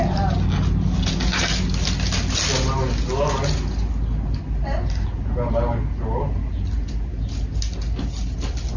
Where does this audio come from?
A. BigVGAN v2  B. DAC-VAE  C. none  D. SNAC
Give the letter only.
C